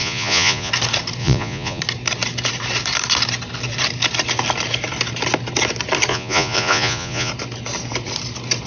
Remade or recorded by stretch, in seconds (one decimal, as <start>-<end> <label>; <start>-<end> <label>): 0.0-0.7 remade; 0.7-1.2 recorded; 1.2-1.8 remade; 1.8-6.1 recorded; 6.1-7.3 remade; 7.3-8.7 recorded